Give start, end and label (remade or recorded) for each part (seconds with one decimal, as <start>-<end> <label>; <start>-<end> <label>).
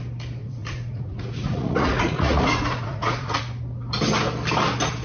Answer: 0.0-0.4 recorded; 0.4-3.4 remade; 3.4-5.0 recorded